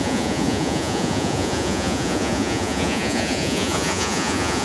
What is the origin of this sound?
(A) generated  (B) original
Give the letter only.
A